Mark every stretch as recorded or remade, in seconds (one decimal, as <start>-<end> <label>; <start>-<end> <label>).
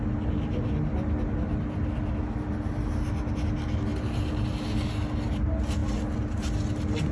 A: 0.0-7.1 recorded